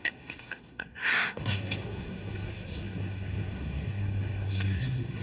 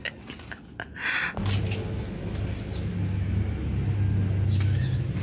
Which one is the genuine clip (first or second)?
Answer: second